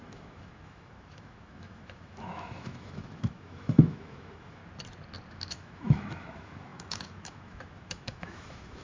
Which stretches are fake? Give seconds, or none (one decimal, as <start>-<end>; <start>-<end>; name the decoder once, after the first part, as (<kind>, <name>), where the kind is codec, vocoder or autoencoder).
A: 0.0-4.6 (autoencoder, DAC-VAE); 5.3-8.8

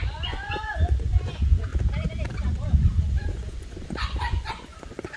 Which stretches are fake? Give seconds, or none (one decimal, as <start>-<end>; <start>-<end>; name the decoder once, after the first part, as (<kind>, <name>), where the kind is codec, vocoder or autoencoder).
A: 0.0-1.7 (vocoder, Vocos); 2.5-5.2

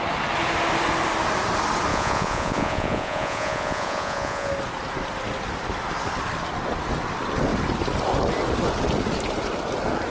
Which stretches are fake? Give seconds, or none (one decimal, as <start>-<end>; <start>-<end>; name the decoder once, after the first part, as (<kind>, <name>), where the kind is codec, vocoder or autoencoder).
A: 1.9-4.5 (vocoder, Vocos)